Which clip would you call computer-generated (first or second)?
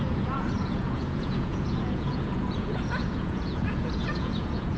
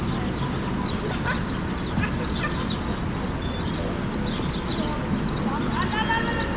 first